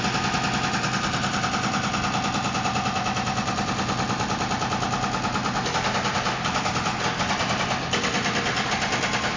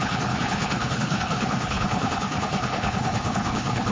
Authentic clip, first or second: first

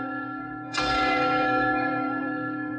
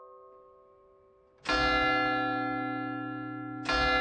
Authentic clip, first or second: second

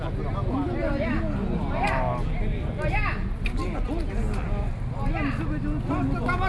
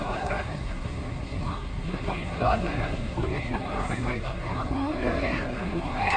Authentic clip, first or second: first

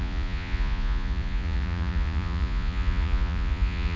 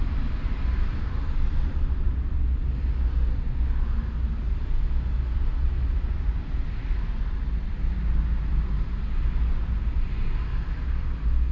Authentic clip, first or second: second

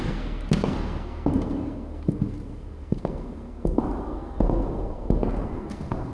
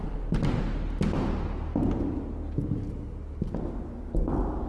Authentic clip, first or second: second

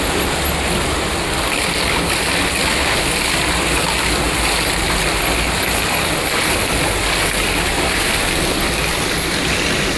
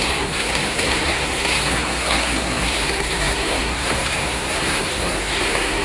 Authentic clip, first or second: first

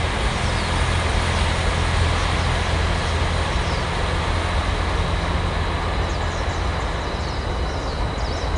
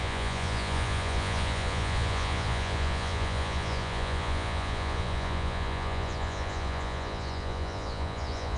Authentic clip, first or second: first